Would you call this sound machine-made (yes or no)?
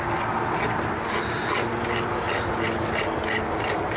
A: no